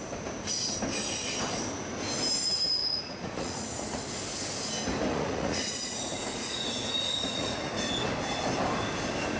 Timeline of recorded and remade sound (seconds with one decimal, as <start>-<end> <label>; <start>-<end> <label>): 0.0-2.8 recorded; 2.8-4.0 remade; 4.0-5.1 recorded; 5.1-7.7 remade; 7.7-9.4 recorded